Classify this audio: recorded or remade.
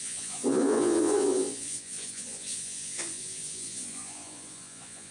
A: remade